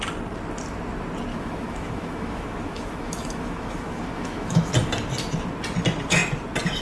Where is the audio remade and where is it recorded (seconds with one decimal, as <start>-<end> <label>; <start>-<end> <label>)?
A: 0.0-1.3 recorded; 1.3-4.7 remade; 4.7-6.8 recorded